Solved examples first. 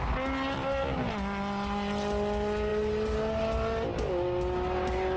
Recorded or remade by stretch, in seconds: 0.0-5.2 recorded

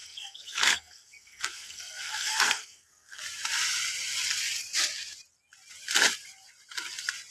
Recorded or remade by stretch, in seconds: 0.0-3.2 remade; 3.2-7.3 recorded

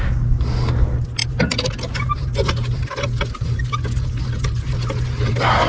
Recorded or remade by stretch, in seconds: 0.0-5.7 recorded

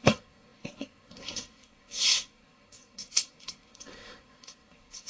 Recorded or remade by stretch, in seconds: 0.0-5.1 remade

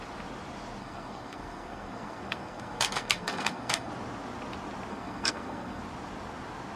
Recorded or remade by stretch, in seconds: 0.0-0.8 recorded; 0.8-3.9 remade; 3.9-4.9 recorded; 4.9-5.8 remade; 5.8-6.8 recorded

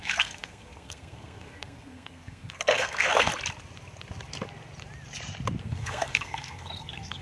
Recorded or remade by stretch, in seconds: 0.0-3.3 remade; 3.3-5.6 recorded; 5.6-7.2 remade